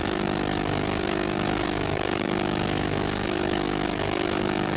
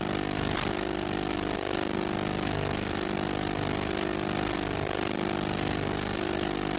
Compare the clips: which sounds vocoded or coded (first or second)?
first